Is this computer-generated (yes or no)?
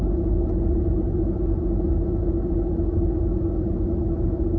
no